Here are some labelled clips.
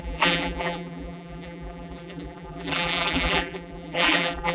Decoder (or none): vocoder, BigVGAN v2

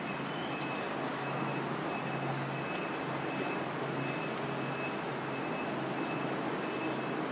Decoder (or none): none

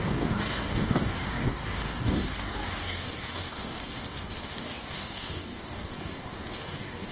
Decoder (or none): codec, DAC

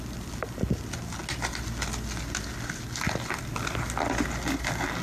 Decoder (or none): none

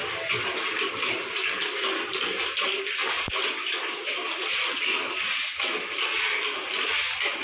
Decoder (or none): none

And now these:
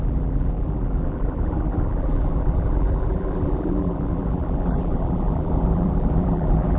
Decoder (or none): vocoder, BigVGAN v2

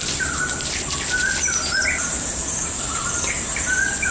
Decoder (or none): none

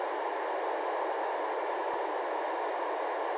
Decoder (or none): none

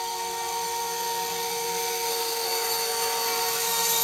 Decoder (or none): codec, SNAC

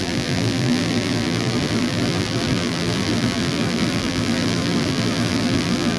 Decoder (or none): vocoder, BigVGAN v2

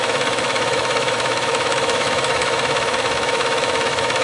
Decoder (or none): autoencoder, DAC-VAE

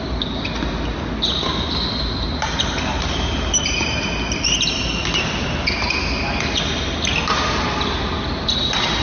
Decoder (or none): none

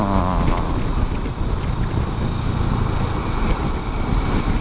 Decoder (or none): none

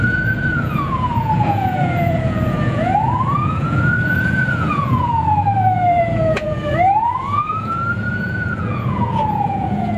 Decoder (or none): vocoder, Vocos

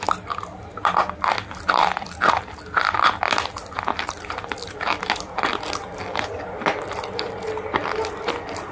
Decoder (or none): none